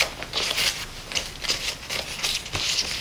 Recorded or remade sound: recorded